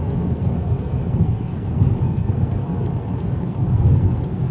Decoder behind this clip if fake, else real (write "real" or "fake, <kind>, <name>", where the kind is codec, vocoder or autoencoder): fake, codec, SNAC